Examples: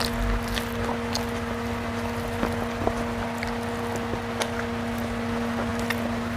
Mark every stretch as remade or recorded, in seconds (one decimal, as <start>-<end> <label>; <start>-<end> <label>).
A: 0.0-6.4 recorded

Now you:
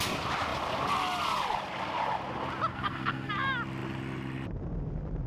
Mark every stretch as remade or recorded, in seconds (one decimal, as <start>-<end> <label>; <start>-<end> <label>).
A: 0.0-2.7 recorded; 2.7-3.3 remade; 3.3-5.3 recorded

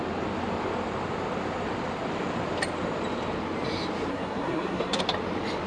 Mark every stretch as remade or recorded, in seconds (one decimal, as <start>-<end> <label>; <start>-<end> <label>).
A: 0.0-4.1 recorded; 4.1-5.0 remade; 5.0-5.7 recorded

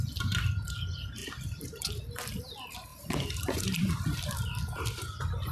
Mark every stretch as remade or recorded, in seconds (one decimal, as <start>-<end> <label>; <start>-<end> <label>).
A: 0.0-1.2 recorded; 1.2-2.4 remade; 2.4-2.9 recorded; 2.9-5.5 remade

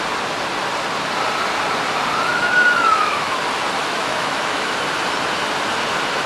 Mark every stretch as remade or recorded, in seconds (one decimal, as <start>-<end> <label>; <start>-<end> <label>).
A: 0.0-2.3 recorded; 2.3-3.4 remade; 3.4-3.8 recorded; 3.8-4.7 remade; 4.7-6.3 recorded

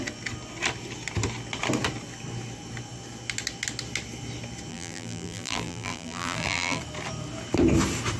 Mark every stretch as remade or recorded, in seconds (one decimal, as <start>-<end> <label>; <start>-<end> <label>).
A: 0.0-4.7 recorded; 4.7-6.8 remade; 6.8-8.2 recorded